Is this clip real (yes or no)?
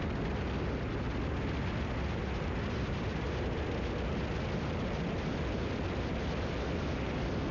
yes